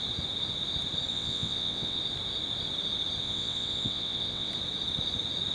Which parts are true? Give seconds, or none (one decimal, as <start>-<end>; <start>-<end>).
0.0-1.1; 2.0-3.2; 4.5-5.5